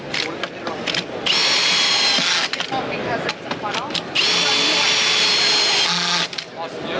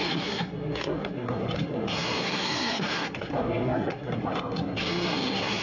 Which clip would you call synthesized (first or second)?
second